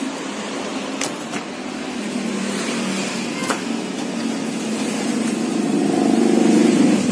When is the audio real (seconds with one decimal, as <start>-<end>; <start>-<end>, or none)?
3.4-4.7